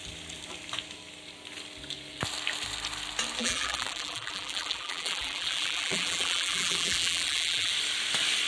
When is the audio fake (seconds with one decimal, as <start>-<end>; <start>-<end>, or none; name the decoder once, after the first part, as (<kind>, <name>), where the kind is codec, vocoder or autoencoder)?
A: 3.4-7.7 (vocoder, BigVGAN v2)